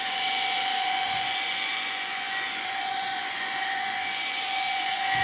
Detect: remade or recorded remade